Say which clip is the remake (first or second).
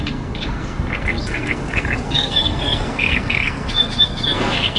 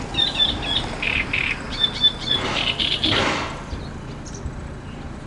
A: first